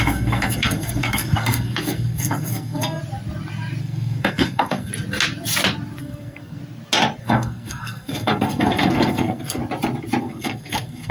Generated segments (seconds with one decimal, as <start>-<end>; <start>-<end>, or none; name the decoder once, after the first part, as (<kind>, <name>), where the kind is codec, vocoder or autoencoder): 0.0-3.0 (codec, SNAC); 3.8-4.9; 6.0-6.6; 7.2-9.6; 10.2-11.1